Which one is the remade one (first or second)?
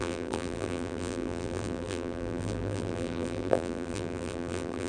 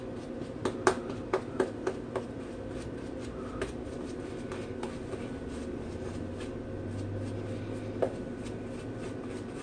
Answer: first